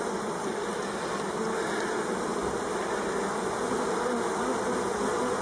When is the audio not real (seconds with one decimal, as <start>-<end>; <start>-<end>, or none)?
none